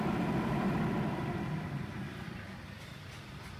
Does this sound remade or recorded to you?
remade